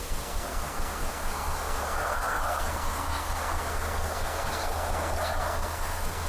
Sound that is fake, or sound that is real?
fake